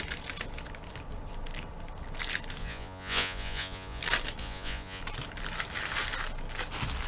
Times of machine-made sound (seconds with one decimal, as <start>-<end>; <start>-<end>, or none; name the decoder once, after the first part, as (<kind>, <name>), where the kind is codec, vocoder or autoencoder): 2.6-4.0 (vocoder, Vocos); 4.4-5.0